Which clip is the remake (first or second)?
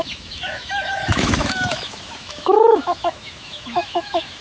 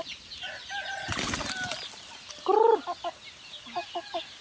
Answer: first